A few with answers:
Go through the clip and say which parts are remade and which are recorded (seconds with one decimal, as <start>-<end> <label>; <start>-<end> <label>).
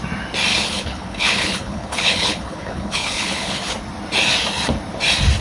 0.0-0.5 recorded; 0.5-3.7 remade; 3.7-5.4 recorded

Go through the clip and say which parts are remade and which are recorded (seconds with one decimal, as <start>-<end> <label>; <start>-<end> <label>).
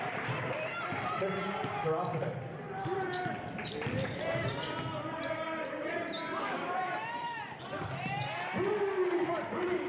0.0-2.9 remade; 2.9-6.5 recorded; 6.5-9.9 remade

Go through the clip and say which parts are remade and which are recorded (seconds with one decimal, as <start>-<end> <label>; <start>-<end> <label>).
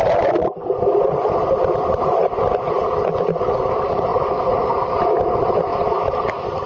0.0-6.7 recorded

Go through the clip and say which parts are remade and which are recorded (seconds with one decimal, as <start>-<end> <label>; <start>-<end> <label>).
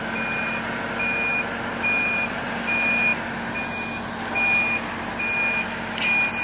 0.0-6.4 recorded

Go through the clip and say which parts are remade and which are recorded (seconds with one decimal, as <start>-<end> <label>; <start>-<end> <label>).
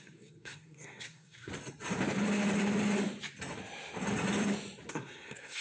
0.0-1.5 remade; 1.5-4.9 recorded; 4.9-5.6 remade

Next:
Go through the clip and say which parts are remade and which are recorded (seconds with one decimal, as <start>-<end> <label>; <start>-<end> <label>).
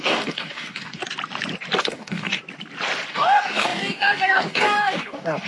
0.0-1.0 remade; 1.0-1.8 recorded; 1.8-2.4 remade; 2.4-3.1 recorded; 3.1-5.5 remade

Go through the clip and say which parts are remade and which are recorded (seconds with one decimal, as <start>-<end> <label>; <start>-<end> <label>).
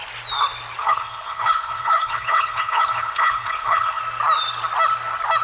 0.0-0.8 recorded; 0.8-4.0 remade; 4.0-5.4 recorded